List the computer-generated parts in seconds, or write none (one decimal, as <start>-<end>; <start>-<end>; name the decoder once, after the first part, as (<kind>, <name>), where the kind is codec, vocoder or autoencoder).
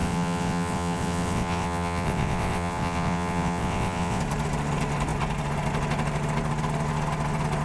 0.0-4.2 (vocoder, WaveNeXt)